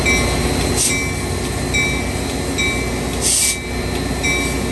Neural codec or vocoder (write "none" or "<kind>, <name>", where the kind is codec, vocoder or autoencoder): none